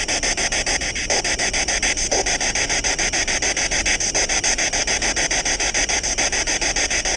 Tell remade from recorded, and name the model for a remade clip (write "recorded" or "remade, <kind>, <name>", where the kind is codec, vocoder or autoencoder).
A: recorded